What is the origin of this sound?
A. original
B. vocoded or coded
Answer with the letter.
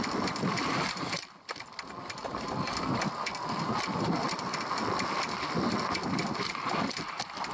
A